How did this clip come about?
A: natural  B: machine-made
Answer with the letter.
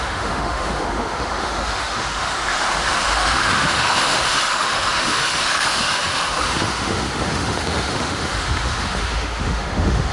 B